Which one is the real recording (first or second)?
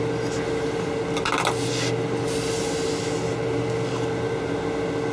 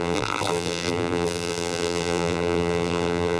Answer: first